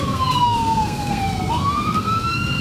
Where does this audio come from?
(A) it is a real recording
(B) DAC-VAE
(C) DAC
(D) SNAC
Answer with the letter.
D